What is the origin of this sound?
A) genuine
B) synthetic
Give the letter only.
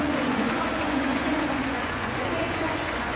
B